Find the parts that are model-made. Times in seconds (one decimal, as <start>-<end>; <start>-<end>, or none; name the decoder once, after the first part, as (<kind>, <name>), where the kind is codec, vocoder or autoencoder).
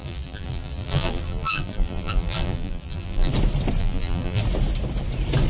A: 0.0-3.3 (vocoder, BigVGAN v2); 3.8-4.4